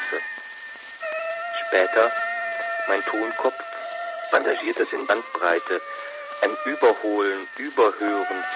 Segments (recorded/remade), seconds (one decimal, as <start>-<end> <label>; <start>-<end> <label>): 0.0-3.8 recorded; 3.8-5.1 remade; 5.1-8.6 recorded